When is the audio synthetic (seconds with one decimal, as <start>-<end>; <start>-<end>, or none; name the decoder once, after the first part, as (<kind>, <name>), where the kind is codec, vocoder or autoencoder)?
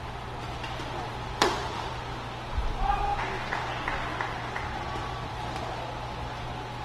1.1-2.0 (vocoder, BigVGAN v2); 5.0-5.6